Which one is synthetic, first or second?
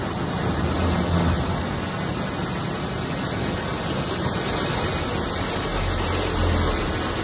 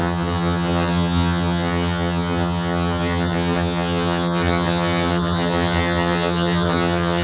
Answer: second